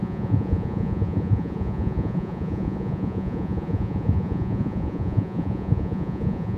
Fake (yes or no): yes